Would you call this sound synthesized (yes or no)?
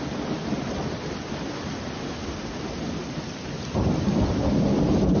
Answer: yes